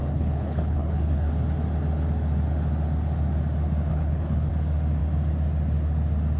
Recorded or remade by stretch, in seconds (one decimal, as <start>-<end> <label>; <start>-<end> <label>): 0.0-1.3 remade; 1.3-3.9 recorded; 3.9-4.5 remade; 4.5-6.4 recorded